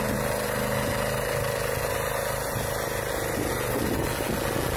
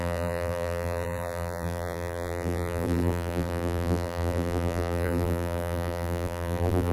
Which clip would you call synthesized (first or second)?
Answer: second